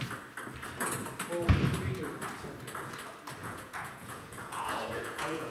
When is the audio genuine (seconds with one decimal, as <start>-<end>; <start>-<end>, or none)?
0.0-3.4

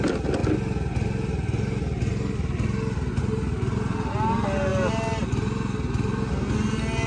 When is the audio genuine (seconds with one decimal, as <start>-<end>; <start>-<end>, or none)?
0.0-7.1

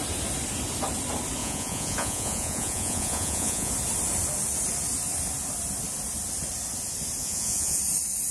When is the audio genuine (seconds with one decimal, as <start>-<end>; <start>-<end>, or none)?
0.0-1.4; 3.7-7.2; 7.8-8.3